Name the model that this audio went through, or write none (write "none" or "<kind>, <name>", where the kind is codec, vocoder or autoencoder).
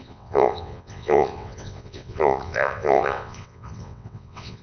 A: vocoder, WaveNeXt